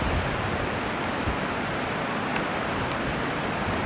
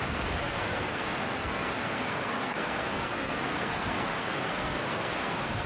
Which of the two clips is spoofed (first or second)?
second